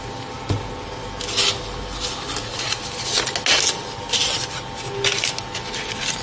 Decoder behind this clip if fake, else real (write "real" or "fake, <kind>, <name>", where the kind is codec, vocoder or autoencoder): real